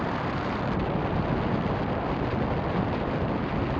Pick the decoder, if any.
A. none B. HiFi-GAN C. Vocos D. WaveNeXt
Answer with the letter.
A